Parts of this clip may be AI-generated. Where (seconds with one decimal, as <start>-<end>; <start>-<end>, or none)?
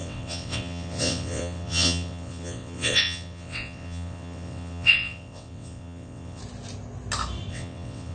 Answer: 0.0-6.4; 7.5-8.1